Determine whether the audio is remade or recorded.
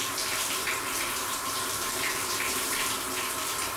remade